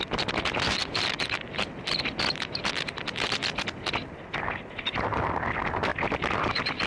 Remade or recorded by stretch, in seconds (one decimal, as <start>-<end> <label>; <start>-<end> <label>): 0.0-6.9 recorded